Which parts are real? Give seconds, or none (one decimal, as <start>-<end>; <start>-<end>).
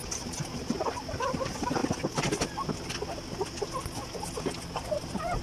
0.0-0.8; 1.8-4.8